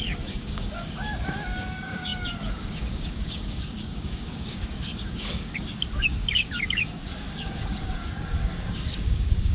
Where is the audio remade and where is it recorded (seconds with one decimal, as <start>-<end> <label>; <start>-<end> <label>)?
0.0-9.5 remade